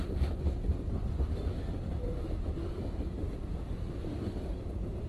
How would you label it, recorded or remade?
recorded